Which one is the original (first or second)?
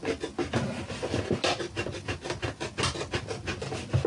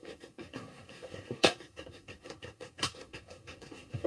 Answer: first